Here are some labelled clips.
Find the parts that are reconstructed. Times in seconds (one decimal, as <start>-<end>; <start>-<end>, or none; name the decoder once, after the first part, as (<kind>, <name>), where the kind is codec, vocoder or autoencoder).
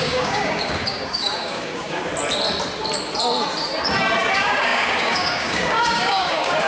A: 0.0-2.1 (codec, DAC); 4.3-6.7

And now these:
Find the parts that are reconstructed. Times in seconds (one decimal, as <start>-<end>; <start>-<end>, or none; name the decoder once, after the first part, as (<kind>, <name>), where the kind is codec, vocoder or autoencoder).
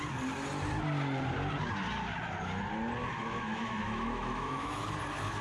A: 3.0-4.8 (autoencoder, DAC-VAE)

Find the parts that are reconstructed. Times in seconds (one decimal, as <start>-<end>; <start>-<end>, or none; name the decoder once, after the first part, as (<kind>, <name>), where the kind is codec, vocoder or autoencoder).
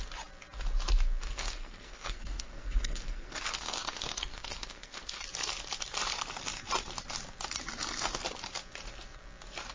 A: 1.2-5.2 (codec, SNAC)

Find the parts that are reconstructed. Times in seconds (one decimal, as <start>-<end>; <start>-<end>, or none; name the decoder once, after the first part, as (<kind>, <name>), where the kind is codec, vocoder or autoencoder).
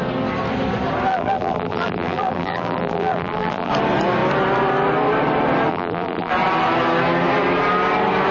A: 1.1-3.7 (vocoder, BigVGAN v2); 5.7-6.3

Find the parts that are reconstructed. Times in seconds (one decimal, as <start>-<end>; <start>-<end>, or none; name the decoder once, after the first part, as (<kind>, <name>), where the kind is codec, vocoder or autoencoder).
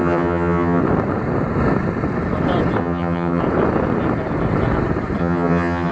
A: 0.0-0.8 (vocoder, HiFi-GAN); 2.8-3.4; 5.2-5.9